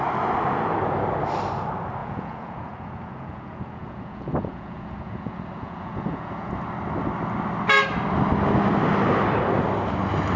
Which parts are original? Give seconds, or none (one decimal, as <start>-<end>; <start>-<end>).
0.0-2.0; 6.5-10.4